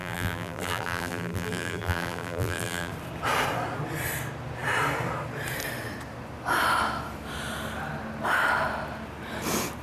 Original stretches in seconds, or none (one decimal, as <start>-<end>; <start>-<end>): 2.9-9.8